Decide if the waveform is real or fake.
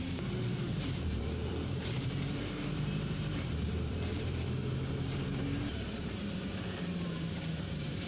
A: fake